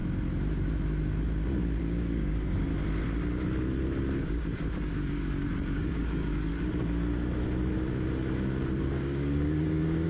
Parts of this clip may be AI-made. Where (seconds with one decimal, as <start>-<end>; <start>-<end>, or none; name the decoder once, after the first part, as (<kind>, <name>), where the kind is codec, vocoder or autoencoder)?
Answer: 1.8-2.7 (codec, DAC); 4.2-6.5; 8.8-10.1